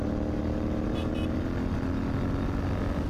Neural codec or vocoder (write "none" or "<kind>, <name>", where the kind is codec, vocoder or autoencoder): none